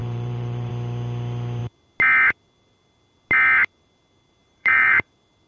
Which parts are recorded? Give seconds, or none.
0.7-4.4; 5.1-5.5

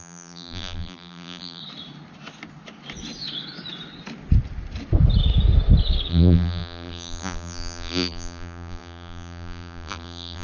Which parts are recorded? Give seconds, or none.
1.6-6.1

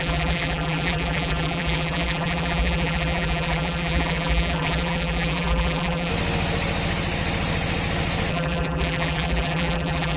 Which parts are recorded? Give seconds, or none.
6.1-8.3